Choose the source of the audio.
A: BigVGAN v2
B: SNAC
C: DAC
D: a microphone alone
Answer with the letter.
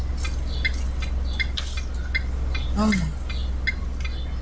D